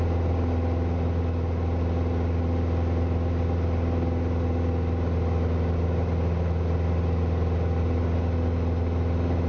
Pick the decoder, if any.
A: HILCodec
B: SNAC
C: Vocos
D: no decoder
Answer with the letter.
D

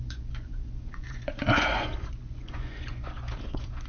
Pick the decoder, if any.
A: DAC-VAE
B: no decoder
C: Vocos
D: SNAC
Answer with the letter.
C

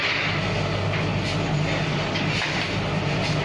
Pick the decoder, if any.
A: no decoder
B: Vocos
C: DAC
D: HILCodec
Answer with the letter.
A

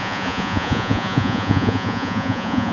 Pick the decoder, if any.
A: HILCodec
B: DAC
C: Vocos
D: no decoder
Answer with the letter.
C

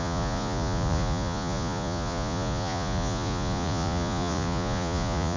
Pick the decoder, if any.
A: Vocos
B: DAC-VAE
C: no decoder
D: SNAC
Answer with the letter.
A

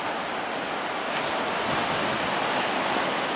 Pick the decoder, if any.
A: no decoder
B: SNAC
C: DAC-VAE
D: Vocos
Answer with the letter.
A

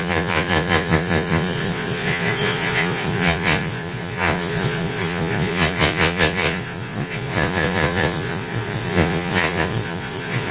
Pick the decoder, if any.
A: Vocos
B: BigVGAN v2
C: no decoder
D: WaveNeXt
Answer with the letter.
A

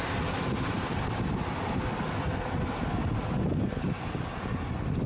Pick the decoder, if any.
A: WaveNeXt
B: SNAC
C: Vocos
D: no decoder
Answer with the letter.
D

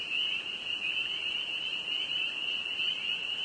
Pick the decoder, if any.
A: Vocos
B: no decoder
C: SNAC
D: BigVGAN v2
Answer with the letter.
B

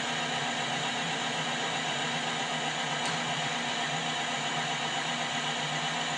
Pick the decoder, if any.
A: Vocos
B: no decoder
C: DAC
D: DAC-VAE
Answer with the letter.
B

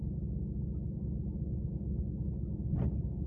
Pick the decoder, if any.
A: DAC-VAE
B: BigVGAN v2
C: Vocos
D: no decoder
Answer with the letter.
D